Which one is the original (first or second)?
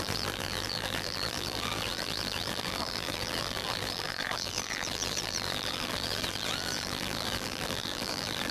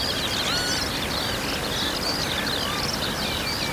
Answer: second